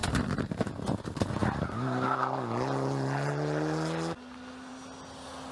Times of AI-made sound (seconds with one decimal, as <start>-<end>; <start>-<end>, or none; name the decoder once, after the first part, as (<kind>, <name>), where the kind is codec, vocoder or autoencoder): 0.0-0.7 (vocoder, BigVGAN v2)